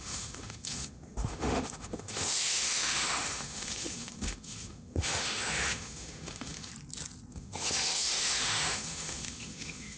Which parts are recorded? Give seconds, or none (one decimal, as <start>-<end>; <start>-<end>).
6.7-7.3